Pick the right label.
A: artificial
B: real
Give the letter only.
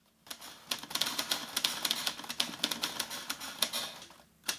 B